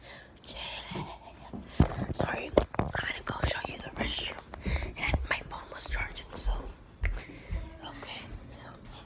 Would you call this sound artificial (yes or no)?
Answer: no